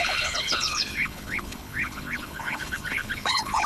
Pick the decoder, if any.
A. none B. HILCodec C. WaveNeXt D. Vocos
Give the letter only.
B